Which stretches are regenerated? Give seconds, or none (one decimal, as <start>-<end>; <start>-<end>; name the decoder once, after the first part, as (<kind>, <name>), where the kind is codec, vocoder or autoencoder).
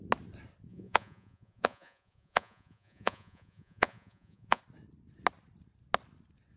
0.7-4.6 (vocoder, Vocos)